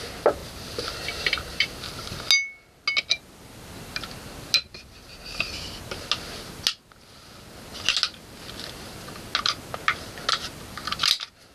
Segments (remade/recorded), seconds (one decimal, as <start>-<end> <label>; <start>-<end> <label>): 0.0-0.4 recorded; 0.4-2.2 remade; 2.2-5.0 recorded; 5.0-5.5 remade; 5.5-11.5 recorded